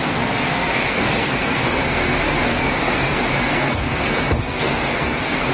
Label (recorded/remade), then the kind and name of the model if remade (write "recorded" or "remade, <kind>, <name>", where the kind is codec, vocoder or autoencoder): remade, codec, SNAC